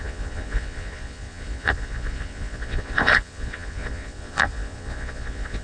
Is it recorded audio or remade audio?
remade